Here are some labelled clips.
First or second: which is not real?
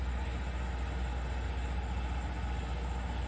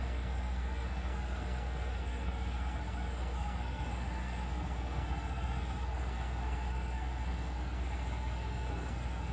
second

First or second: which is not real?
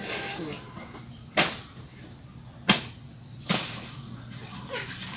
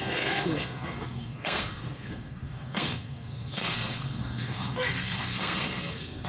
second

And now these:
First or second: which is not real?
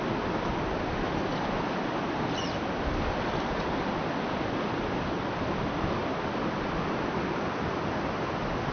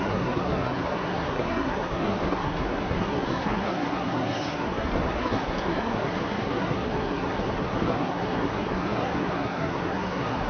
second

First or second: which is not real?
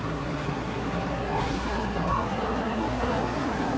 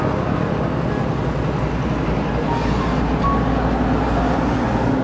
first